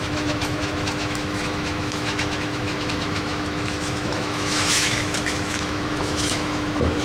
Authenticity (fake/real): fake